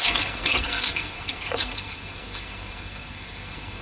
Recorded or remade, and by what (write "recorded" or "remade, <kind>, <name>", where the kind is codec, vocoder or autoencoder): remade, codec, SNAC